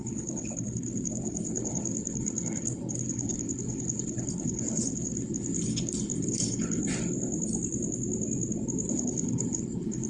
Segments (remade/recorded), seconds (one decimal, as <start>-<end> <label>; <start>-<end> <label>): 0.0-6.8 remade; 6.8-8.9 recorded; 8.9-10.1 remade

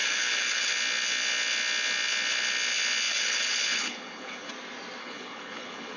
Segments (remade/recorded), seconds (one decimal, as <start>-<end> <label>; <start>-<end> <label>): 0.0-0.7 remade; 0.7-3.1 recorded; 3.1-4.5 remade; 4.5-5.0 recorded; 5.0-6.0 remade

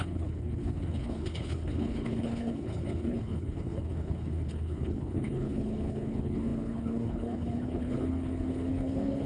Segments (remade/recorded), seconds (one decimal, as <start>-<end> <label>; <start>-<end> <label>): 0.0-9.3 remade

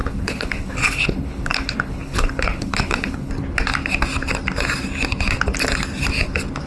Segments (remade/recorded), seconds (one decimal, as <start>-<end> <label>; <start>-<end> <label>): 0.0-3.3 remade; 3.3-6.7 recorded